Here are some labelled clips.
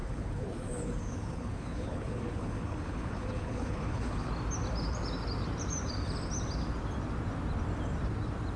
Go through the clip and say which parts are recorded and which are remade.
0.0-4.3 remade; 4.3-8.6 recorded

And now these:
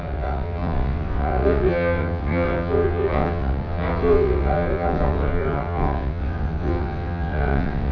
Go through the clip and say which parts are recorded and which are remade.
0.0-7.9 remade

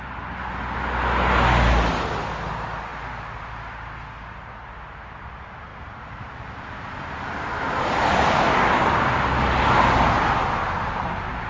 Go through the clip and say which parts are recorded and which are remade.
0.0-11.5 recorded

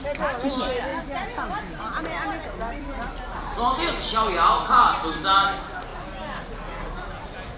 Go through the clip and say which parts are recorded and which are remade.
0.0-7.6 recorded

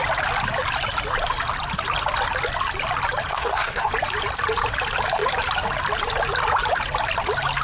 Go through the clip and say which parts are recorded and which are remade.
0.0-3.3 recorded; 3.3-3.9 remade; 3.9-7.6 recorded

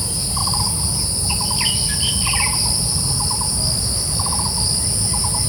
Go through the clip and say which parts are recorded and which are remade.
0.0-5.5 recorded

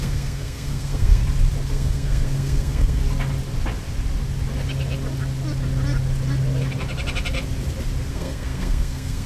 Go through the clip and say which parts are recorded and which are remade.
0.0-1.2 remade; 1.2-1.7 recorded; 1.7-3.0 remade; 3.0-8.1 recorded; 8.1-9.3 remade

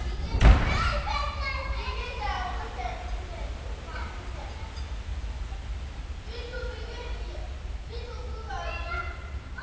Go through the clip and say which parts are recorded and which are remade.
0.0-9.6 recorded